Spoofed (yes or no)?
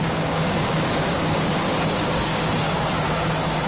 yes